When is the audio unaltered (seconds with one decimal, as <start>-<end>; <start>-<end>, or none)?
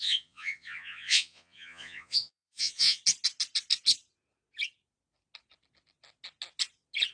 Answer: 3.0-7.1